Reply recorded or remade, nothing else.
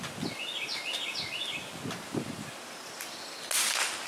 recorded